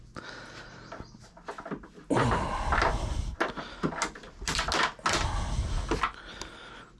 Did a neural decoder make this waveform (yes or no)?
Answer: no